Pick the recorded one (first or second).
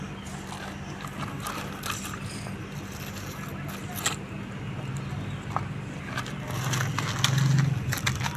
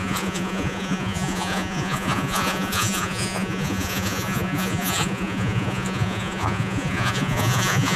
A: first